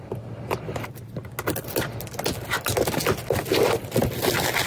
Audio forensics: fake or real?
real